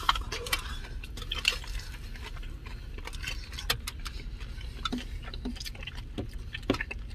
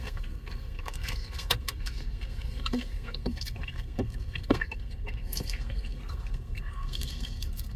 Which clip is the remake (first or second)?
second